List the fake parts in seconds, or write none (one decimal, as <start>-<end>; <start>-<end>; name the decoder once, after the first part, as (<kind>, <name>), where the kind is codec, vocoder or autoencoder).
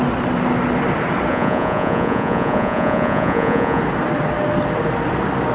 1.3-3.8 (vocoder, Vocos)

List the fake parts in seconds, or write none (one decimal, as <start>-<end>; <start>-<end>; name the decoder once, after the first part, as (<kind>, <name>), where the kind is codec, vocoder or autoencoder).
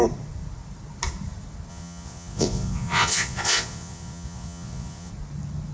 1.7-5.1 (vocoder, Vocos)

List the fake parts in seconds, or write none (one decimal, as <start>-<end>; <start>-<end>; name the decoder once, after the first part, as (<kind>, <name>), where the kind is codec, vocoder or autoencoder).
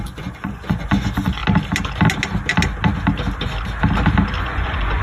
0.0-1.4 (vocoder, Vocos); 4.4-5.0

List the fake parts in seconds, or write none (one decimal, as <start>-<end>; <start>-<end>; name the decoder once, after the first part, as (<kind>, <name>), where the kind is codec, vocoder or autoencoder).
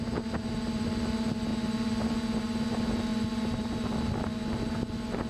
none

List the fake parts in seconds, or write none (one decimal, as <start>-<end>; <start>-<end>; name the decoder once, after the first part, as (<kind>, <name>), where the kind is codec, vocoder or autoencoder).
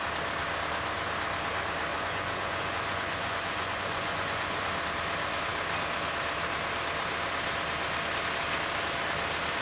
1.9-4.7 (vocoder, Vocos)